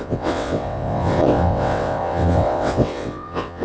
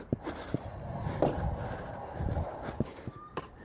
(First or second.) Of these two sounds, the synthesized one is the first